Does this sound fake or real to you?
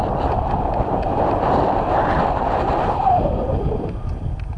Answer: real